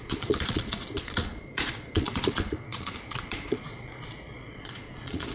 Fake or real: fake